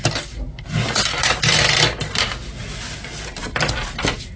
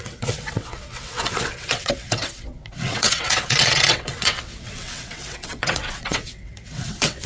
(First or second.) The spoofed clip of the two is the second